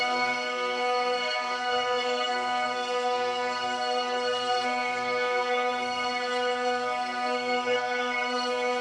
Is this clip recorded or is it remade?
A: remade